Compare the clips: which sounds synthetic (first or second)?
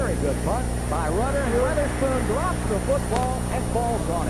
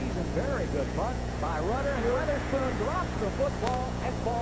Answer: second